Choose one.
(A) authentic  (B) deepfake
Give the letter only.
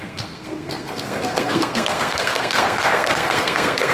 B